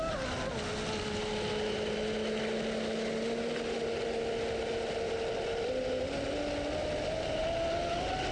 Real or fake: real